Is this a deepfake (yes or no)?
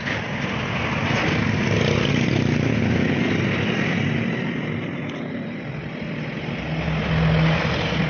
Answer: no